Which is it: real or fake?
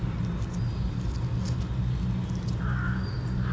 real